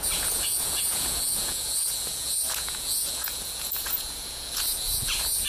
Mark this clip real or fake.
fake